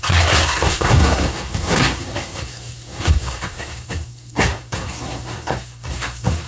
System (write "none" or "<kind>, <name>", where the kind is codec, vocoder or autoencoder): codec, SNAC